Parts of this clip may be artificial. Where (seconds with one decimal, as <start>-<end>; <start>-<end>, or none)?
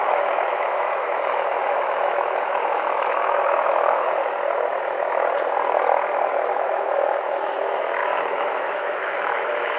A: 0.0-4.2; 6.2-9.8